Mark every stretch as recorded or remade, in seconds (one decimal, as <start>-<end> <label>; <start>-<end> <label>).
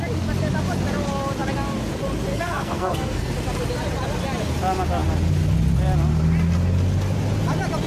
0.0-2.3 recorded; 2.3-3.3 remade; 3.3-7.9 recorded